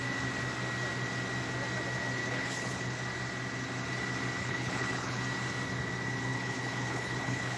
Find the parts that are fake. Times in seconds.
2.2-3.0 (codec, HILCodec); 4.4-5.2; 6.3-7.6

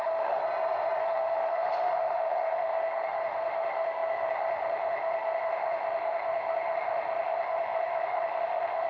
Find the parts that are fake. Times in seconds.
0.0-0.4 (autoencoder, DAC-VAE); 1.0-8.9

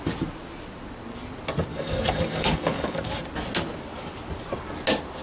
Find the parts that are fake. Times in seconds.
1.7-3.2 (codec, DAC)